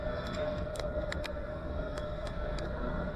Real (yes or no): no